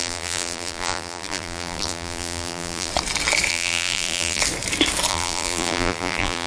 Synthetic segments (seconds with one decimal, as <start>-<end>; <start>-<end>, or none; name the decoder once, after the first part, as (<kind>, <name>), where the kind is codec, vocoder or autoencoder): 0.0-2.9 (vocoder, BigVGAN v2); 3.5-4.4; 5.1-6.5